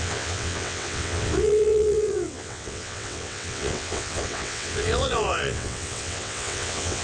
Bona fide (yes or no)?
no